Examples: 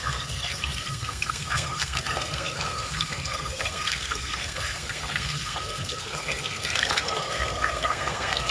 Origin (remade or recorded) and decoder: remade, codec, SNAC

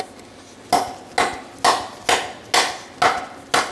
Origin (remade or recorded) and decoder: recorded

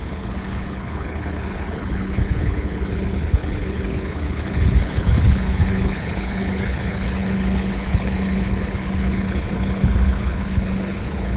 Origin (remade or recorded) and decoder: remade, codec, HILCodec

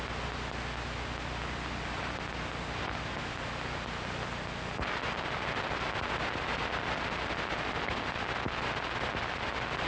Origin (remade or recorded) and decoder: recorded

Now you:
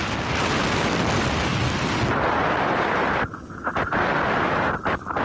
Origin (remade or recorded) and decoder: recorded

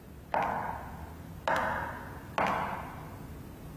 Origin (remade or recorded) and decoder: recorded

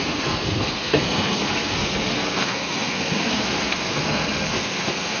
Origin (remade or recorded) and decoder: remade, codec, SNAC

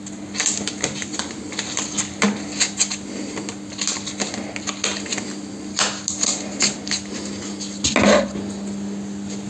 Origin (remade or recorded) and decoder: recorded